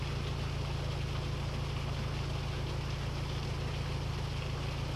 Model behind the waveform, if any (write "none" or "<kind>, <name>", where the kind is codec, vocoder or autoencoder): none